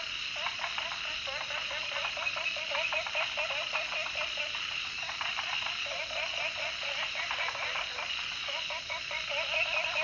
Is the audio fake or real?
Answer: real